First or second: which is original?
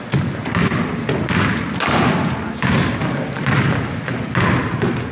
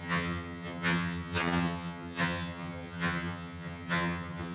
first